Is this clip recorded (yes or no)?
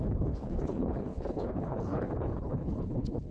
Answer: no